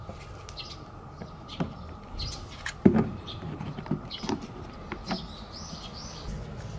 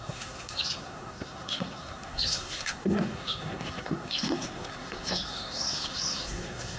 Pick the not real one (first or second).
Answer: second